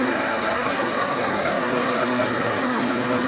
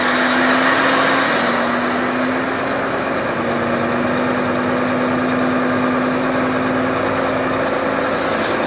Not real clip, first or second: first